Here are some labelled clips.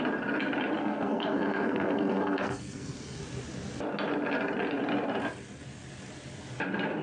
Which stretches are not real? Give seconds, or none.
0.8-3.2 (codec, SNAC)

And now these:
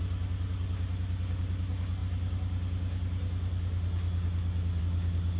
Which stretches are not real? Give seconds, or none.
none

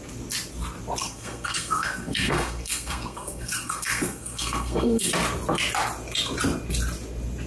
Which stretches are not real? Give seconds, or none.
1.0-5.1 (codec, SNAC)

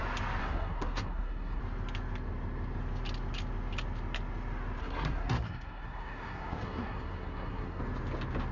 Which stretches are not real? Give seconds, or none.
0.4-1.6 (codec, SNAC); 4.8-7.8

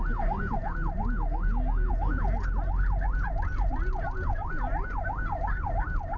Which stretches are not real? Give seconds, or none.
none

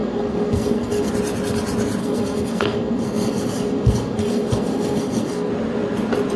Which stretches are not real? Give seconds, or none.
0.0-1.1 (codec, SNAC); 2.0-5.5

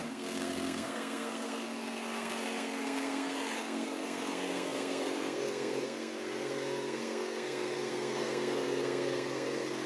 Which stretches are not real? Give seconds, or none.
0.0-9.9 (codec, SNAC)